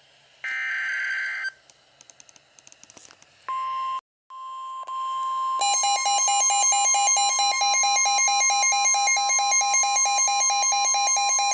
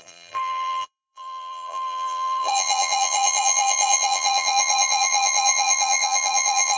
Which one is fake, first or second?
second